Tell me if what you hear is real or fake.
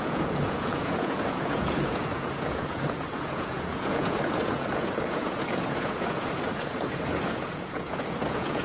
fake